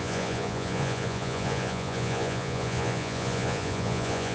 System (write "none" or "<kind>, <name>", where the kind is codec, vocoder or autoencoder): vocoder, Vocos